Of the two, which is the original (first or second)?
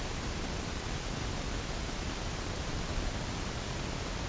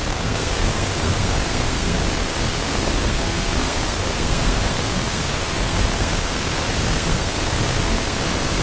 first